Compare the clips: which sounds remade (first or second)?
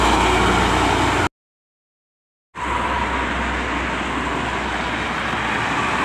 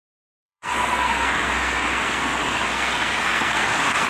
second